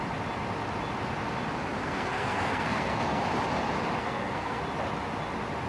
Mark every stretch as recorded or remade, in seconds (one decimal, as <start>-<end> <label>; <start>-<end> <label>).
0.0-1.8 recorded; 1.8-3.2 remade; 3.2-4.0 recorded; 4.0-4.6 remade; 4.6-5.7 recorded